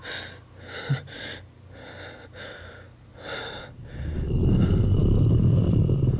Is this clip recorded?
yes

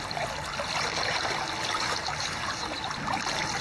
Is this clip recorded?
yes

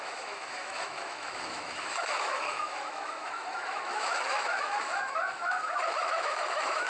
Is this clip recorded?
no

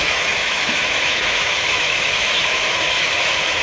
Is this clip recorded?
no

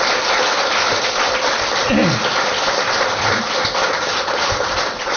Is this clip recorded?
yes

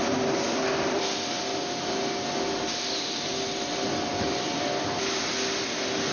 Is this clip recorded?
yes